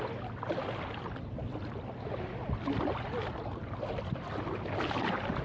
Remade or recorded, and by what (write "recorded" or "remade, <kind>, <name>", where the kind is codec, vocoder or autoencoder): recorded